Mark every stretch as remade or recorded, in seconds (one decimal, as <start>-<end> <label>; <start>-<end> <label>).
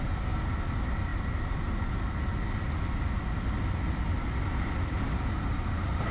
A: 0.0-6.1 recorded